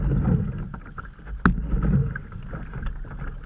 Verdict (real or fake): real